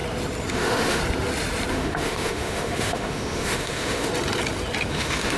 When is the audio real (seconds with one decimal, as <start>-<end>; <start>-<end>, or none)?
0.0-0.5; 1.0-1.7; 4.1-4.9